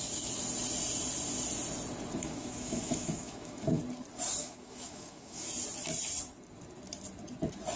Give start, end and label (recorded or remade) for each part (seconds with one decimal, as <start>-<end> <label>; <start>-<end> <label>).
0.0-2.2 recorded; 2.2-3.8 remade; 3.8-4.4 recorded; 4.4-5.5 remade; 5.5-7.8 recorded